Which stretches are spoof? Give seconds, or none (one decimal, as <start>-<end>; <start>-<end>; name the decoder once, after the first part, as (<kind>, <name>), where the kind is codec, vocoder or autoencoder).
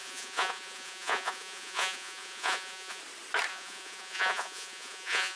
0.0-3.0 (vocoder, Vocos); 3.5-5.4